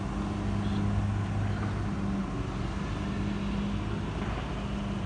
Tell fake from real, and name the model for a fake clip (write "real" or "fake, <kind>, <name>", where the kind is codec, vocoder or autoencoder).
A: real